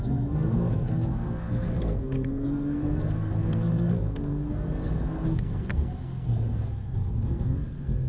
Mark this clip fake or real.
fake